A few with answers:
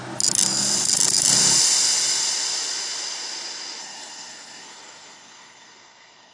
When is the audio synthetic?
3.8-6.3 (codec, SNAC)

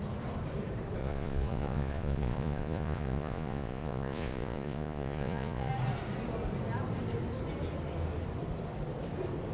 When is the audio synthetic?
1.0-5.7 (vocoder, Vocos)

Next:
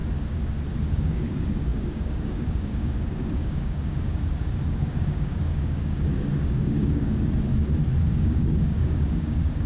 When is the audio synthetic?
0.9-7.5 (codec, DAC); 8.1-9.7